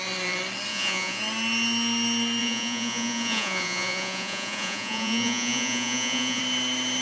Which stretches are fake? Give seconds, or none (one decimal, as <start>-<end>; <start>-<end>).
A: 0.7-1.2; 2.4-6.4